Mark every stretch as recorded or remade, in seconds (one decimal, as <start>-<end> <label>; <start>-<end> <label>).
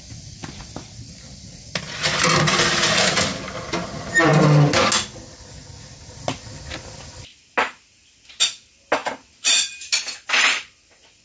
0.0-11.2 recorded